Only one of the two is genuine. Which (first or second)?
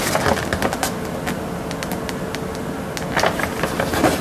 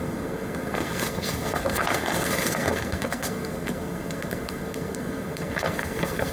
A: first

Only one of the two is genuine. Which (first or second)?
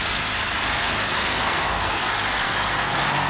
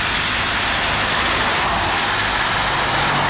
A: second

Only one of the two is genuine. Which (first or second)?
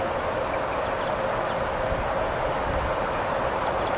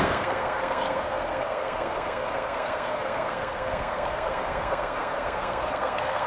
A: first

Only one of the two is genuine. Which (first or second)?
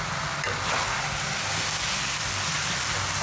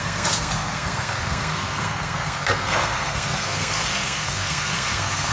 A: first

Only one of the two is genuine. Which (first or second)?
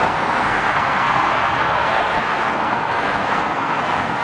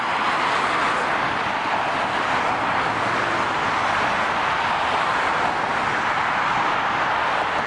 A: second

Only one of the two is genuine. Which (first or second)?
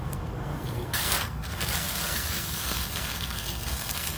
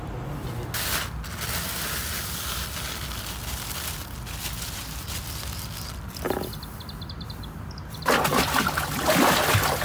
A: second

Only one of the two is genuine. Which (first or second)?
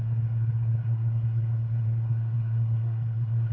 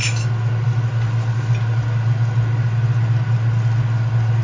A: second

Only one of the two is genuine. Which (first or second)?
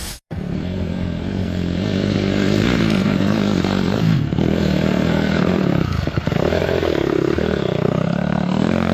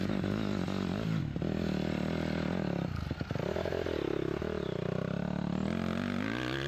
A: second